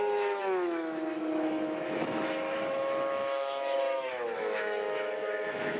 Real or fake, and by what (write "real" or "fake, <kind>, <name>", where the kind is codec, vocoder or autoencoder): fake, autoencoder, DAC-VAE